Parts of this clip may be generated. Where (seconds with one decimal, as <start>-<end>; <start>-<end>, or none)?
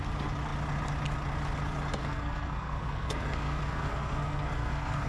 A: 2.0-5.1